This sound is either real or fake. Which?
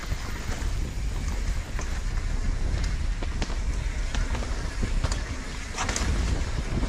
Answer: real